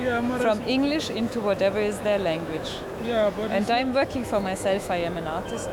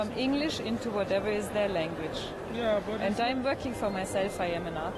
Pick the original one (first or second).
second